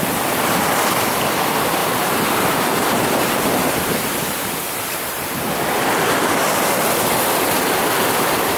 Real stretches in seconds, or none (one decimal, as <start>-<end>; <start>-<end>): 0.0-1.8; 5.8-8.6